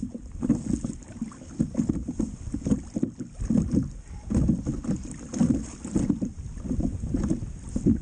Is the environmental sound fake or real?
real